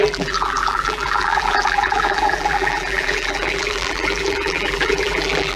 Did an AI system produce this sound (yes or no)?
yes